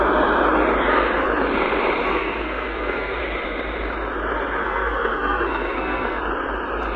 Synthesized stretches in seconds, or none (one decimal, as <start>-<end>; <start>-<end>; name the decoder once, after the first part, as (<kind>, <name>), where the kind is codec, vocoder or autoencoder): 2.1-3.2 (codec, SNAC); 4.6-6.2